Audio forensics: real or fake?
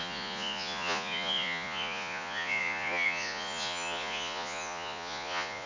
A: fake